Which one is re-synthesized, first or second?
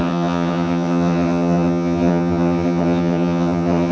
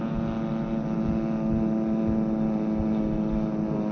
first